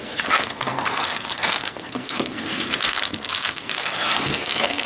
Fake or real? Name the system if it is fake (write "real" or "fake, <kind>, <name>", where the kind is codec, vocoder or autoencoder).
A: fake, codec, SNAC